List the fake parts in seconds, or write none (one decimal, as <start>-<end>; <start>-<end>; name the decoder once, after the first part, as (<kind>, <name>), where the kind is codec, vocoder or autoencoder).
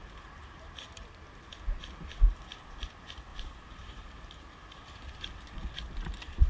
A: 0.4-1.2 (vocoder, BigVGAN v2); 3.3-5.8